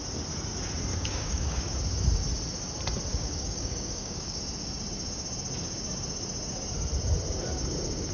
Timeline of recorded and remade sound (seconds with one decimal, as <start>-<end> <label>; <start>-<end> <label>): 0.0-0.9 recorded; 0.9-1.7 remade; 1.7-3.1 recorded; 3.1-4.4 remade; 4.4-8.1 recorded